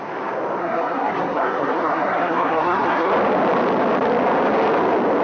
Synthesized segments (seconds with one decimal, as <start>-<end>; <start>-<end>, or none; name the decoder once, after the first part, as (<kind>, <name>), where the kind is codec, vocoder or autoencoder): 0.6-3.1 (codec, SNAC)